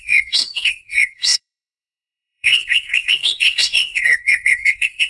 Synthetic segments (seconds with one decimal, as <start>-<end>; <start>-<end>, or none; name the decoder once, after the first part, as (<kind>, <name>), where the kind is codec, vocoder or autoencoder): 0.0-5.1 (codec, SNAC)